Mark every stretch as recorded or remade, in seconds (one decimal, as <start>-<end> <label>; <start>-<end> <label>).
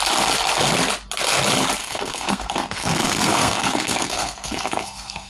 0.0-1.8 recorded; 1.8-5.3 remade